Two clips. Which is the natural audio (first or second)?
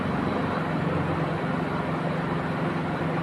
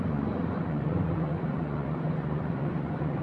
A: first